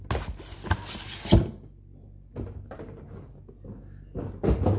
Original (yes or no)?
yes